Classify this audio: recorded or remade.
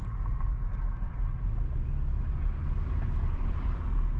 recorded